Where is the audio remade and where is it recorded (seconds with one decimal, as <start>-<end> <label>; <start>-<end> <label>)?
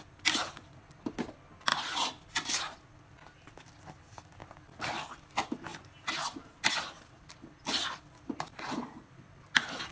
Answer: 0.0-9.9 recorded